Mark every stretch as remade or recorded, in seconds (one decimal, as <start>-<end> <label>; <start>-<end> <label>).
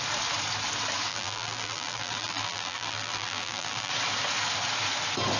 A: 0.0-1.1 recorded; 1.1-3.9 remade; 3.9-5.4 recorded